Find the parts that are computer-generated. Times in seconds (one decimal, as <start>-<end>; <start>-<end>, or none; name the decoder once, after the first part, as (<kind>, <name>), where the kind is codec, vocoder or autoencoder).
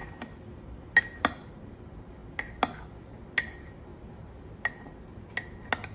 none